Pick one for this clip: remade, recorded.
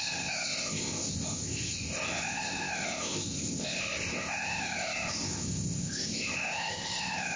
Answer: remade